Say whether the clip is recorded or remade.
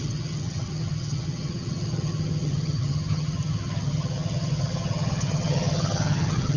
remade